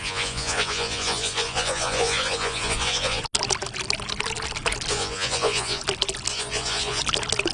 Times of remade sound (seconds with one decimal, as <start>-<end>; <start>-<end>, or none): 0.0-3.2; 4.9-5.8; 6.3-7.0